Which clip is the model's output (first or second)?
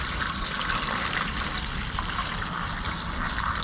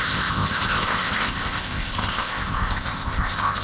second